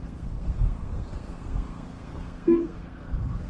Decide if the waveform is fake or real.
fake